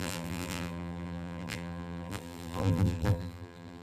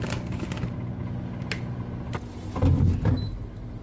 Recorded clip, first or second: second